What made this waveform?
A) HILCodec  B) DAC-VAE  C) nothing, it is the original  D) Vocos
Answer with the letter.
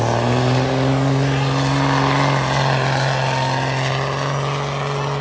C